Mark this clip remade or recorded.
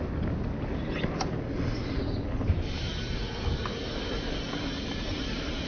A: recorded